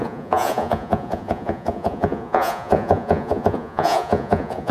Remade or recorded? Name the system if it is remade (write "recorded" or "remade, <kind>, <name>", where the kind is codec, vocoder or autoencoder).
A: remade, vocoder, Vocos